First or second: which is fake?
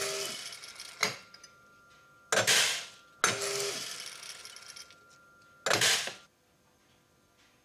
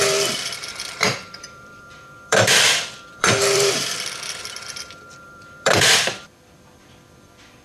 second